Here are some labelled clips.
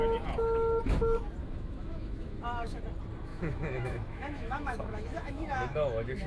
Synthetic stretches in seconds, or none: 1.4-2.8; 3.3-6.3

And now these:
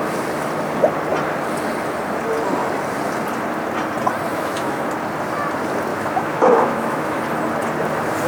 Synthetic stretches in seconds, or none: 4.3-4.8; 5.9-7.2

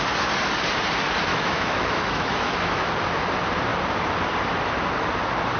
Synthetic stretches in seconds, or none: 1.3-2.9

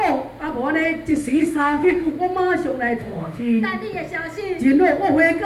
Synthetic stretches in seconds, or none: 1.1-2.1; 3.0-3.6

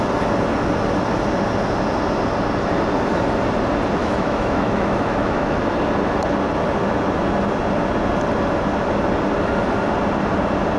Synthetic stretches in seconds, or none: 4.0-5.6

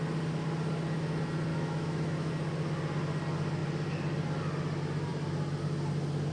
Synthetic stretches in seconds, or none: 1.5-2.3

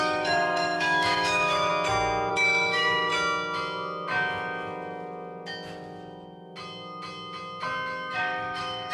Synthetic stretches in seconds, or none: 0.0-1.7; 2.3-3.1; 8.1-8.9